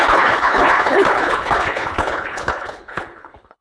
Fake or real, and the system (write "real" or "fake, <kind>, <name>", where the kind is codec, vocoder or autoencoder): fake, codec, HILCodec